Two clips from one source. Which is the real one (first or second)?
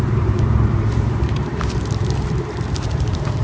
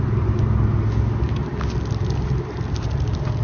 second